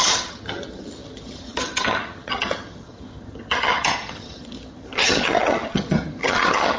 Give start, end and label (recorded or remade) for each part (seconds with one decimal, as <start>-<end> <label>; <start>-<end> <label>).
0.0-6.8 remade